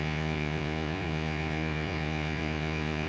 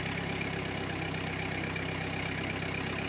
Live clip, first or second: second